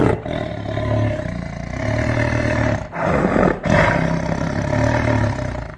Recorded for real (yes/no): yes